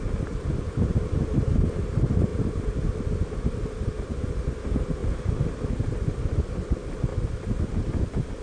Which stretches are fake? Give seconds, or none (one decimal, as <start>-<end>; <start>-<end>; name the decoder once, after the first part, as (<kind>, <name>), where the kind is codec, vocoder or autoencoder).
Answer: none